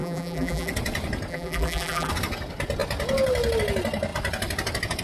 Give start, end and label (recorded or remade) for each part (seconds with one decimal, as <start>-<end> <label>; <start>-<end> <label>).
0.0-0.7 remade; 0.7-1.3 recorded; 1.3-2.1 remade; 2.1-5.0 recorded